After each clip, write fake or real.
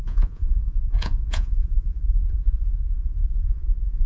fake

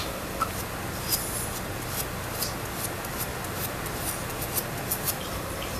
real